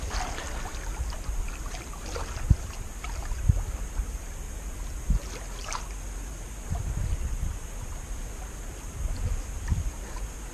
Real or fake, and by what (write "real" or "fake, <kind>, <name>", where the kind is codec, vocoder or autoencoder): real